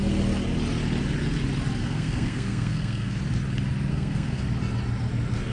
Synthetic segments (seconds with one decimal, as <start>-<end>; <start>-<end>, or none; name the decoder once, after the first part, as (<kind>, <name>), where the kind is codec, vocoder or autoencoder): 1.8-3.2 (codec, SNAC); 3.9-4.4